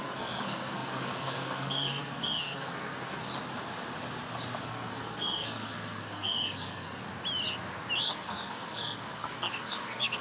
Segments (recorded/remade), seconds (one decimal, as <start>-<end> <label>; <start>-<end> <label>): 0.0-3.3 remade; 3.3-4.6 recorded; 4.6-7.0 remade; 7.0-8.0 recorded; 8.0-10.2 remade